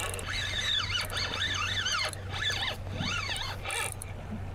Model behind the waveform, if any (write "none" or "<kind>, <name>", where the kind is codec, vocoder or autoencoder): none